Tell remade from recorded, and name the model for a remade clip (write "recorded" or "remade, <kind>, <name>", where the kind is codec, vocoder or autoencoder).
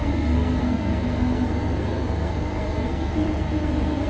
remade, codec, SNAC